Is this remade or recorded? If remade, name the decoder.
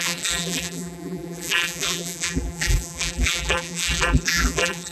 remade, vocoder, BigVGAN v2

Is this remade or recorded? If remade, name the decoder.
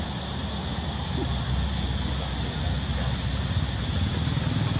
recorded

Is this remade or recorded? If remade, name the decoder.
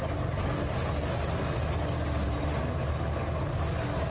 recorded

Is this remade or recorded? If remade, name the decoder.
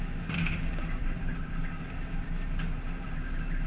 recorded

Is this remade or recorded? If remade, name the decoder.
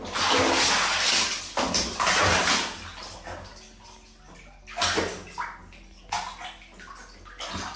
recorded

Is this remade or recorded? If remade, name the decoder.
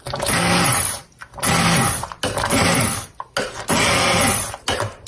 recorded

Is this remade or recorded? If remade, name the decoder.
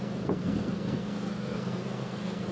remade, codec, SNAC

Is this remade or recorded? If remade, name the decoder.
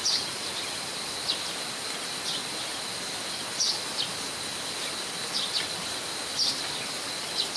recorded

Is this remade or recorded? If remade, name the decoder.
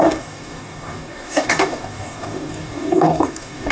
remade, codec, DAC